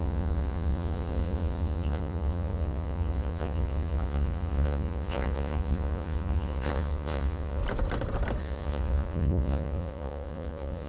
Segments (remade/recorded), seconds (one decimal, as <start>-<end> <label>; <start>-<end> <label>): 0.0-7.6 remade; 7.6-8.4 recorded; 8.4-10.9 remade